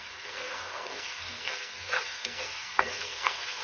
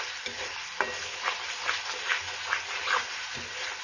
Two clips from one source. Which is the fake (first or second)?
first